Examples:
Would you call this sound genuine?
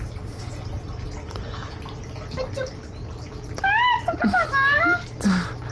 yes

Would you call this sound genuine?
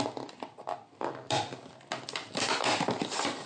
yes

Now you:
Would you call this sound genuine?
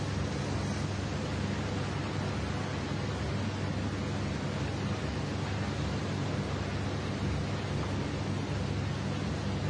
yes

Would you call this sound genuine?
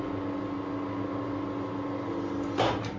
yes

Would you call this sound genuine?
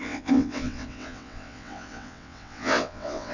no